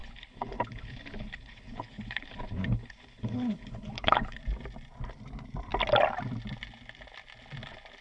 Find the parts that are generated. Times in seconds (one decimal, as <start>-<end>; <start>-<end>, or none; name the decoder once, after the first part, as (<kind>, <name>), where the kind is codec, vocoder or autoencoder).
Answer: 0.0-4.4 (codec, HILCodec)